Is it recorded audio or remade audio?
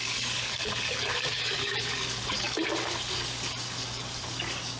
remade